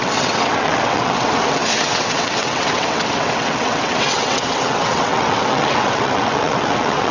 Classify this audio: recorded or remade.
remade